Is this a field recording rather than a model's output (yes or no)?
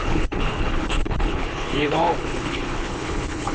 no